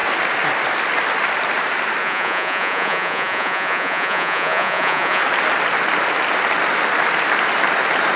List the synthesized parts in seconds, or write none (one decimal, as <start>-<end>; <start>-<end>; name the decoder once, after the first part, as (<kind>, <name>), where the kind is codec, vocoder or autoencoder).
2.0-5.2 (vocoder, Vocos)